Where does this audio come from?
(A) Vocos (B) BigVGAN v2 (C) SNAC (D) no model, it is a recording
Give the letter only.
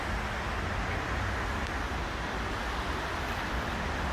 D